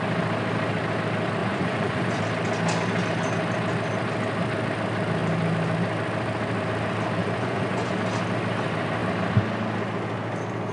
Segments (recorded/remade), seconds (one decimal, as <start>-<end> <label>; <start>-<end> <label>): 0.0-1.4 recorded; 1.4-2.2 remade; 2.2-7.2 recorded; 7.2-7.9 remade; 7.9-10.7 recorded